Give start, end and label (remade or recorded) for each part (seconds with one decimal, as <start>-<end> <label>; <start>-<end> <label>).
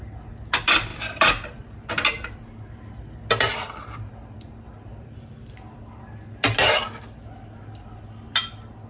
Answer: 0.0-0.9 recorded; 0.9-1.9 remade; 1.9-3.5 recorded; 3.5-5.9 remade; 5.9-8.9 recorded